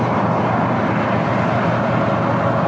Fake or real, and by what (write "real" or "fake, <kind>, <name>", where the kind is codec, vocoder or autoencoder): real